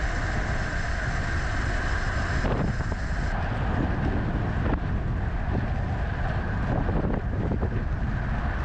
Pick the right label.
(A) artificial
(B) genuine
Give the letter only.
B